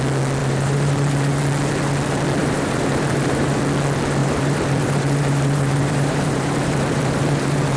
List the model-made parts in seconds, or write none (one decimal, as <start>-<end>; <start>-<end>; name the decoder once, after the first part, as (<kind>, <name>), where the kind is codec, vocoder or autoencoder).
0.4-1.4 (vocoder, BigVGAN v2); 2.4-3.6; 4.2-7.8